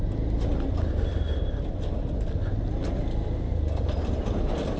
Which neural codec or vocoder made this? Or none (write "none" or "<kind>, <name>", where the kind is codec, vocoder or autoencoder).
none